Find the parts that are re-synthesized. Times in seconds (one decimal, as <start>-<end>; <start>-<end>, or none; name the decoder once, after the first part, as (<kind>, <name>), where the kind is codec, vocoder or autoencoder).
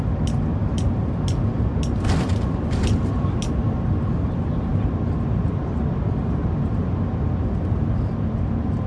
none